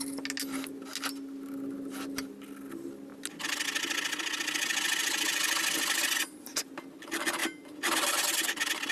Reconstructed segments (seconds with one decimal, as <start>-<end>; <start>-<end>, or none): none